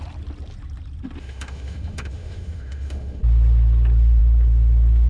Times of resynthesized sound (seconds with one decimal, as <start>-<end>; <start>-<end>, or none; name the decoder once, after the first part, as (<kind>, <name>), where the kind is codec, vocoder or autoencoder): 1.2-3.2 (autoencoder, DAC-VAE)